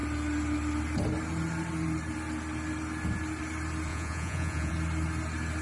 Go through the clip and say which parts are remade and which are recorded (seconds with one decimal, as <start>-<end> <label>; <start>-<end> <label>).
0.0-3.9 recorded; 3.9-4.7 remade; 4.7-5.6 recorded